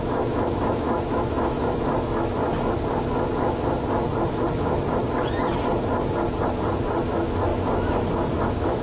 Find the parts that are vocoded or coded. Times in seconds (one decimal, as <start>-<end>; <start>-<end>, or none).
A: 0.0-2.4; 7.1-8.8